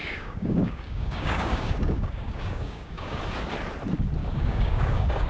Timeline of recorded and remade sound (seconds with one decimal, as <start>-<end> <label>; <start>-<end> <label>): 0.0-3.2 remade; 3.2-4.2 recorded; 4.2-5.3 remade